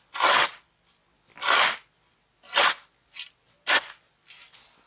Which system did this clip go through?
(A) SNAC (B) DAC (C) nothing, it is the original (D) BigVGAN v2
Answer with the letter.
C